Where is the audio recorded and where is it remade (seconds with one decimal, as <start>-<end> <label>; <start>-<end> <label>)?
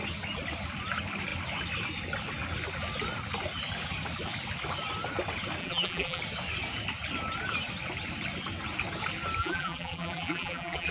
0.0-5.6 recorded; 5.6-6.2 remade; 6.2-9.4 recorded; 9.4-10.9 remade